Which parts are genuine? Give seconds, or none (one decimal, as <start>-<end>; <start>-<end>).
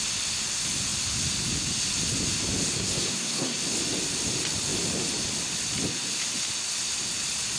0.0-2.7; 3.6-7.6